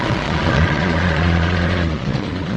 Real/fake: fake